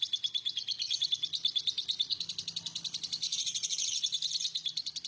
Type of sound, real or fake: real